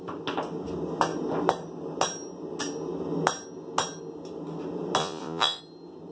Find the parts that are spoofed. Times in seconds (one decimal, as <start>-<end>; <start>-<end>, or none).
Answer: 5.0-5.6